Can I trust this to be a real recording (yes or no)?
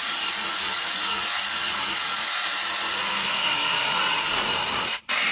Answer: no